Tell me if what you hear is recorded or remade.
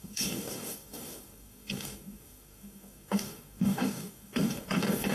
remade